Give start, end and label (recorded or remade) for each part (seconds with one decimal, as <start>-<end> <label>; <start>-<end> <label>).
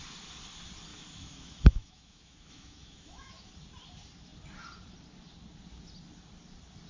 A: 0.0-0.9 recorded; 0.9-3.5 remade; 3.5-6.9 recorded